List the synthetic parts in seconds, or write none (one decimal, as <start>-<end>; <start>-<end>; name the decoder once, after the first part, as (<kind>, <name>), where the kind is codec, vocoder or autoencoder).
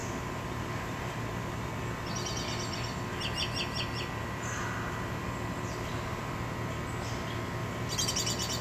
0.0-1.7 (vocoder, BigVGAN v2); 4.2-6.3; 7.6-8.1